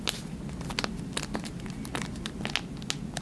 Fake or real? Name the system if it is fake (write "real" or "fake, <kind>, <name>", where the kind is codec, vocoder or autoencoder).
real